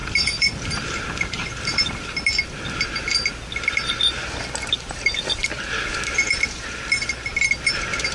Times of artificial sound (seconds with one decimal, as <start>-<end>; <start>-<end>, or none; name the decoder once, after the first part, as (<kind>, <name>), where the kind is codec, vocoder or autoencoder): 0.0-4.2 (vocoder, BigVGAN v2); 4.7-8.1